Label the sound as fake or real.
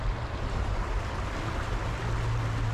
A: real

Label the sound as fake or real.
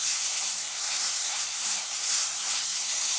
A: fake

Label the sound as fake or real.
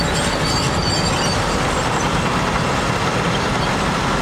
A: real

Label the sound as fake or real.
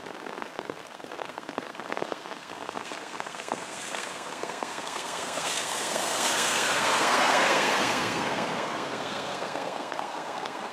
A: fake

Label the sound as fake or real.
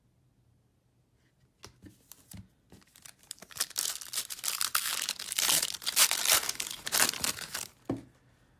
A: real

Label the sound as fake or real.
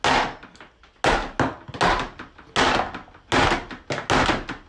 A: real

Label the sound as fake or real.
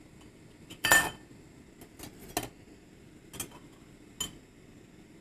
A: real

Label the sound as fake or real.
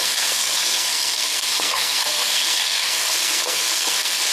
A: fake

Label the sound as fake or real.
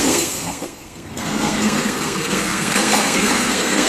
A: fake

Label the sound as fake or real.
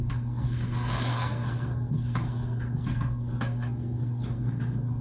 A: fake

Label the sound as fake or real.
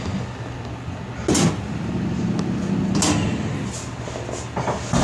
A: real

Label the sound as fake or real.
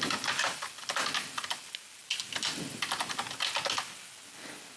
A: real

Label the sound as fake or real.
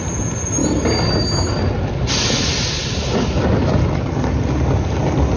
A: real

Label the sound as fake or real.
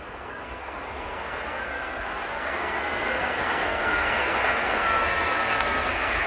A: fake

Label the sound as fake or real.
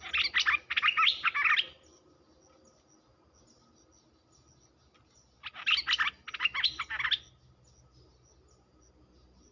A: real